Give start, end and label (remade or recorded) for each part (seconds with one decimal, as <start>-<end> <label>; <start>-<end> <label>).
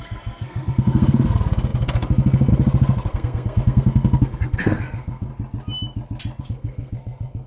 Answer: 0.0-5.3 remade; 5.3-6.4 recorded; 6.4-7.5 remade